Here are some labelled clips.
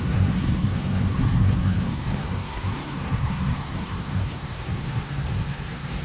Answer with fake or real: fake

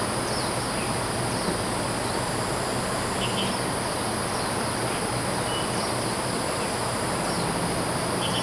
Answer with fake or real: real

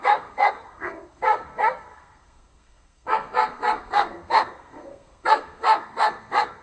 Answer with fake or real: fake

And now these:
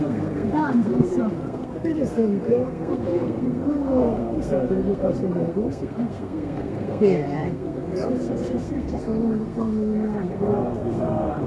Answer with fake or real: fake